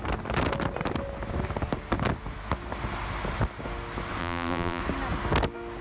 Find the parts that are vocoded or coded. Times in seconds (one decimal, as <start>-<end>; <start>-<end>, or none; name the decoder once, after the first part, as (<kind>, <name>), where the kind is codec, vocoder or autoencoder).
4.2-4.8 (vocoder, BigVGAN v2)

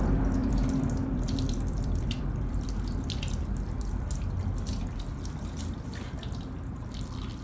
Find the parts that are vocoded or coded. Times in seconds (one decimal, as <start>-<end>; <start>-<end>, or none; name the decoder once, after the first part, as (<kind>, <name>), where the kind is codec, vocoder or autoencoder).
0.4-4.0 (vocoder, BigVGAN v2)

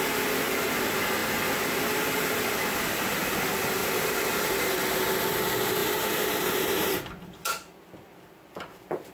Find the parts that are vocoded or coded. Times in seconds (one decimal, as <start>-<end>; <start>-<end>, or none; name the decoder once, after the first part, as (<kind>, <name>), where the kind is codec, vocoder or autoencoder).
3.8-4.8 (vocoder, BigVGAN v2); 5.8-7.1

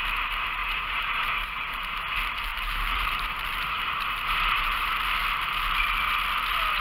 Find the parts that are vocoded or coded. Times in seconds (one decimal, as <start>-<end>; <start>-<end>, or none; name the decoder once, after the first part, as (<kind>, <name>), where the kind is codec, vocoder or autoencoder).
0.6-2.0 (vocoder, BigVGAN v2); 2.5-4.9

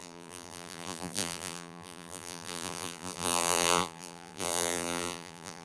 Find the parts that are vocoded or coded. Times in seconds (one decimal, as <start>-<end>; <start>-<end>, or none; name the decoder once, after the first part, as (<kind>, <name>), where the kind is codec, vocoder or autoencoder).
0.0-5.6 (vocoder, BigVGAN v2)